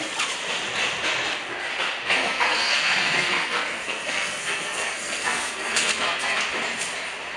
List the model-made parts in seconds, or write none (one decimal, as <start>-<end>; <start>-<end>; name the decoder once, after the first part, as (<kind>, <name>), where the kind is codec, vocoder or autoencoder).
2.0-6.4 (codec, SNAC)